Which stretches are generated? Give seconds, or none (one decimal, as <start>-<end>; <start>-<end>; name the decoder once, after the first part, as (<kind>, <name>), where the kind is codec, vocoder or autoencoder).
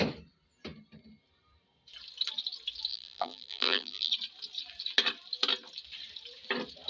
2.9-4.1 (vocoder, BigVGAN v2)